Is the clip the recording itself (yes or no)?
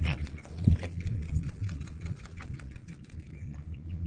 no